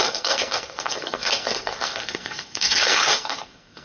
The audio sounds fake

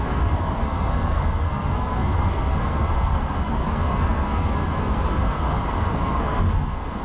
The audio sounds fake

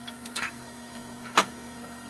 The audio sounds fake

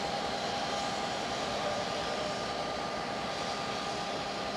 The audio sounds real